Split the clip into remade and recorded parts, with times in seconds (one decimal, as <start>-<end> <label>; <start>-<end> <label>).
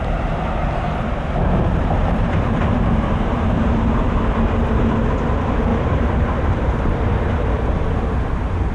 0.0-0.6 recorded; 0.6-1.1 remade; 1.1-2.0 recorded; 2.0-3.6 remade; 3.6-5.7 recorded; 5.7-8.1 remade; 8.1-8.7 recorded